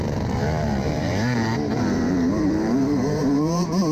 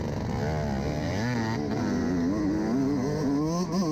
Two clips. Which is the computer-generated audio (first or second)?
first